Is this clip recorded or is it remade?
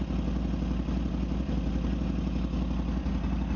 recorded